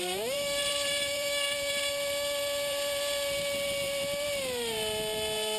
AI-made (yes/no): yes